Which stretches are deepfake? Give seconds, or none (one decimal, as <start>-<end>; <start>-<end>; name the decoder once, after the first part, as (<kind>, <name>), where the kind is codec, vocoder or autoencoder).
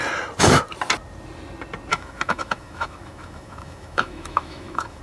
1.9-5.0 (autoencoder, DAC-VAE)